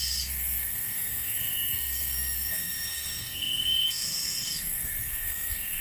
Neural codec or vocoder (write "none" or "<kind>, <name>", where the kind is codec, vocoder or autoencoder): codec, SNAC